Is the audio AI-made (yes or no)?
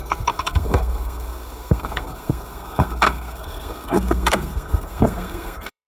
yes